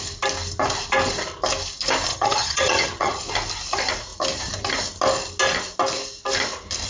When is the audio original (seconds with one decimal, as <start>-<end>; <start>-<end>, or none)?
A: 0.0-2.1; 3.2-6.9